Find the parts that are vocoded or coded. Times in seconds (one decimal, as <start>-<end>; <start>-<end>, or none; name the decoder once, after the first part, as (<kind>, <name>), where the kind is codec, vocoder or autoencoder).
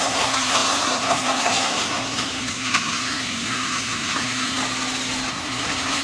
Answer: 0.0-4.6 (codec, SNAC); 5.3-6.0